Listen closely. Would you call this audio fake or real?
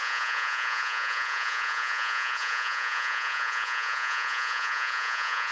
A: fake